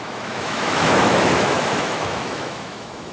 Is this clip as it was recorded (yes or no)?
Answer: no